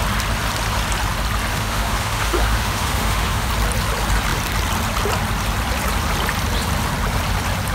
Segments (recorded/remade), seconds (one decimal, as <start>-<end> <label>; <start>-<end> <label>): 0.0-1.5 recorded; 1.5-3.5 remade; 3.5-7.7 recorded